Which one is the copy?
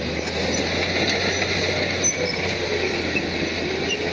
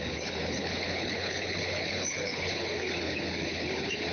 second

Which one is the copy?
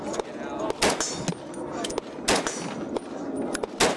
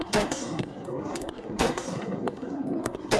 second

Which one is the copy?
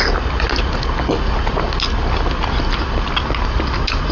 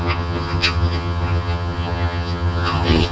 second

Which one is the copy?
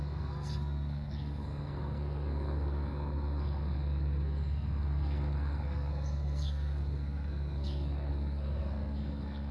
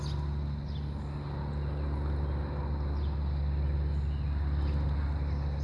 first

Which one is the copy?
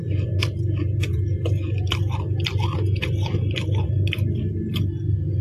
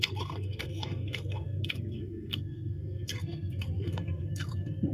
second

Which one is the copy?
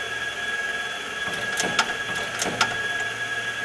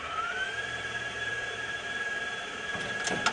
second